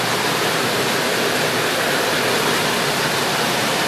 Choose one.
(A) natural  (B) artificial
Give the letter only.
A